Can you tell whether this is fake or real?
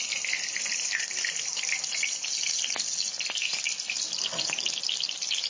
real